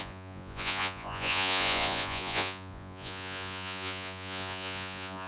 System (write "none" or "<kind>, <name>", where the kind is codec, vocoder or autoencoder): vocoder, Vocos